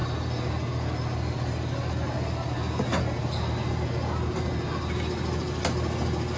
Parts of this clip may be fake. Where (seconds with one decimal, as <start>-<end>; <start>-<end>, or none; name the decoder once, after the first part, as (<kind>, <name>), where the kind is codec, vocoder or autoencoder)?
none